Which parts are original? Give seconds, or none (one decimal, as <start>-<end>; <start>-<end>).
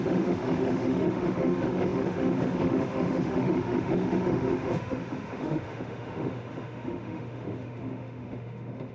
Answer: none